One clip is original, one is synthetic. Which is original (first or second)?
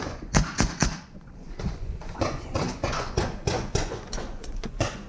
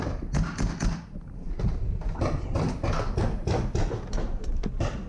second